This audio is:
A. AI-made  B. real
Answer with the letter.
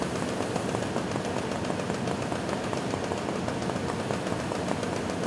B